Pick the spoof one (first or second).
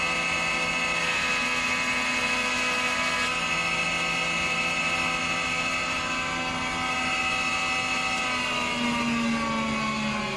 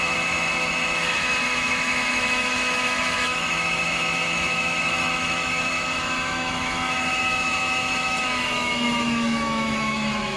second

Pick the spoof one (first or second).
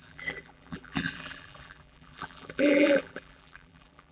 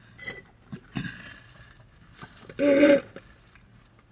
first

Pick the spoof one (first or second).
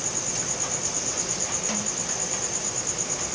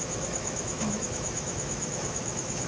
second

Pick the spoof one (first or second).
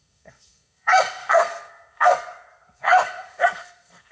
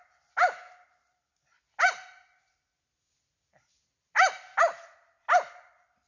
first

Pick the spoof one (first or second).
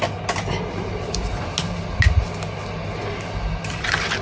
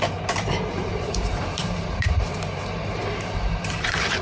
second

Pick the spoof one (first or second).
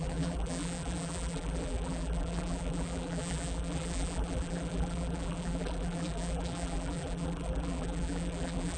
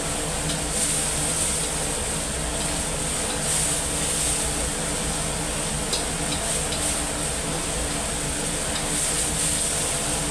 first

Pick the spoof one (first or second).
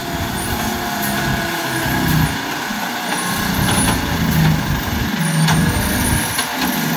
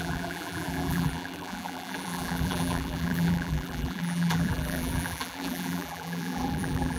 second